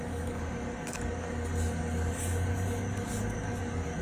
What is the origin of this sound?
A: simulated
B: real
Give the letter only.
A